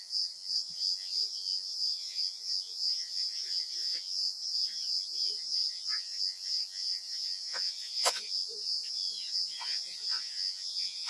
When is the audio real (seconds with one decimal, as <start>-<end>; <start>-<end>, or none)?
none